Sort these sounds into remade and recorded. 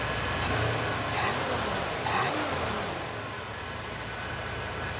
recorded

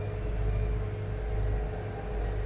recorded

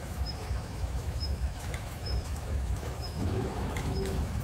remade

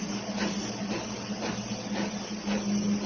recorded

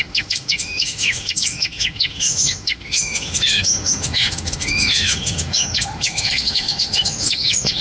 remade